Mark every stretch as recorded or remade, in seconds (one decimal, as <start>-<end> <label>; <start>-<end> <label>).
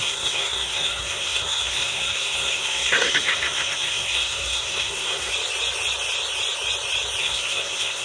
0.0-5.3 remade; 5.3-7.2 recorded; 7.2-8.0 remade